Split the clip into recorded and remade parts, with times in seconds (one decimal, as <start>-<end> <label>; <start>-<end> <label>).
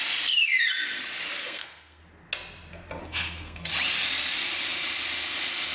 0.0-1.4 recorded; 1.4-2.0 remade; 2.0-3.0 recorded; 3.0-3.7 remade; 3.7-5.7 recorded